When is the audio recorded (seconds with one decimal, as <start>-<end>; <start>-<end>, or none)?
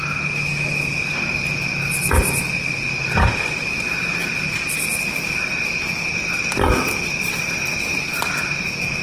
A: 0.0-9.0